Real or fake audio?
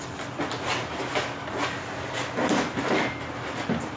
real